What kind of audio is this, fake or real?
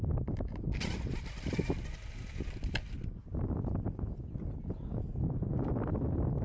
real